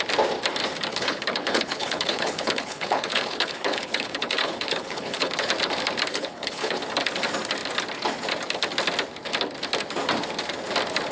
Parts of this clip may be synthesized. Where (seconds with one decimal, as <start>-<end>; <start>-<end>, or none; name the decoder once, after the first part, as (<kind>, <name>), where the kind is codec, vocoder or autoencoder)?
0.9-5.5 (codec, HILCodec); 6.1-6.8